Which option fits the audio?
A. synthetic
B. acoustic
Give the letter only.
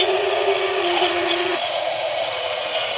A